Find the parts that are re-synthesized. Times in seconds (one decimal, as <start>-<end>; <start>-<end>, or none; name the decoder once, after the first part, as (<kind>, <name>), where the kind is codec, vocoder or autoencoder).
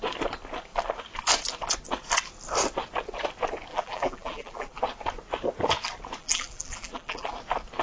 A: 3.7-4.8 (vocoder, BigVGAN v2); 6.2-7.3